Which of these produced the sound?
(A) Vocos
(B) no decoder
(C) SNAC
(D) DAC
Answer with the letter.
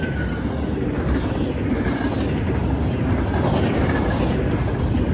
B